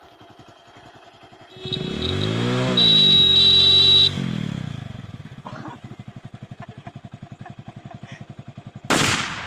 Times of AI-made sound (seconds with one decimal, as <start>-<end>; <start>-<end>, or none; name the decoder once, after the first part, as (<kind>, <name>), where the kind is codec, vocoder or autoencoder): none